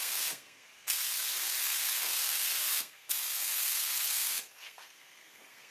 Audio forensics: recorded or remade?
remade